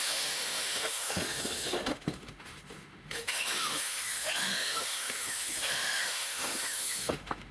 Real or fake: fake